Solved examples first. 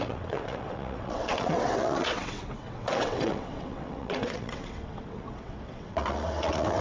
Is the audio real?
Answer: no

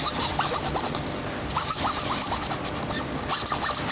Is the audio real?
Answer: yes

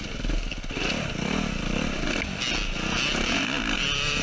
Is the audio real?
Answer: yes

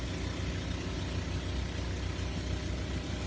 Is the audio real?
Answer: yes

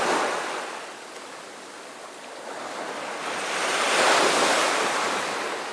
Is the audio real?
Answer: yes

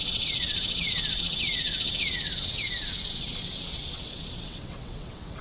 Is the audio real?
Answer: no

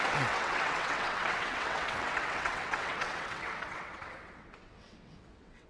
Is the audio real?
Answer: no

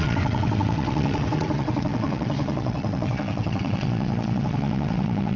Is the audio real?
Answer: no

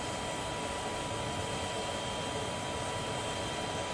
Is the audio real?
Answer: yes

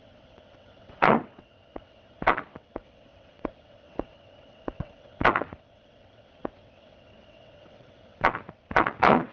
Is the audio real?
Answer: no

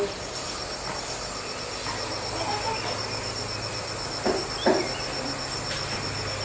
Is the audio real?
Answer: yes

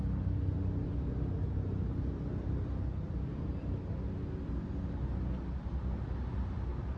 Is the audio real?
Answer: yes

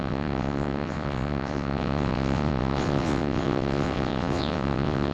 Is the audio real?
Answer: no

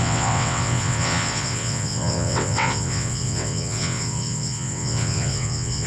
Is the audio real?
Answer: no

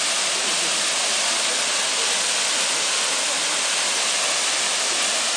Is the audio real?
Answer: yes